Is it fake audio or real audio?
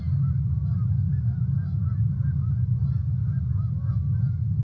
real